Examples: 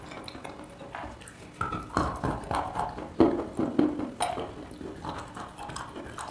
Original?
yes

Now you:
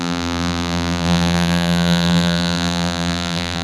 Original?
no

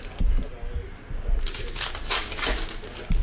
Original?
yes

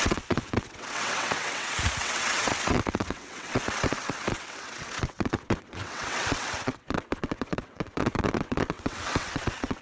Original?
no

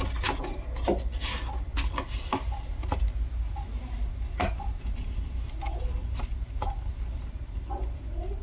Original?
yes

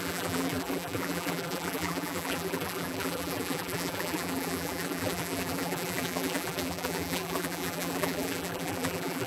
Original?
no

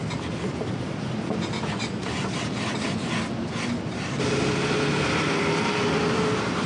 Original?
yes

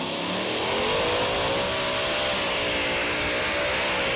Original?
yes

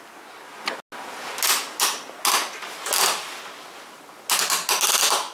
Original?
yes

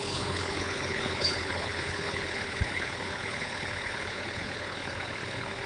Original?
no